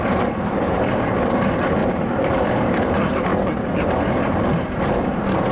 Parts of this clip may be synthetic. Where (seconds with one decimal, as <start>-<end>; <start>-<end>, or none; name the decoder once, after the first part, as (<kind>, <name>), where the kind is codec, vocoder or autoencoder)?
0.0-5.5 (vocoder, BigVGAN v2)